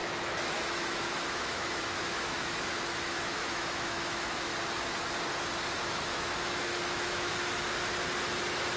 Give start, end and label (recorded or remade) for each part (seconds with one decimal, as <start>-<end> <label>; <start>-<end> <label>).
0.0-4.5 remade; 4.5-5.8 recorded; 5.8-7.3 remade; 7.3-8.8 recorded